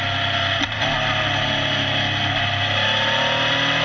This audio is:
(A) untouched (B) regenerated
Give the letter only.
A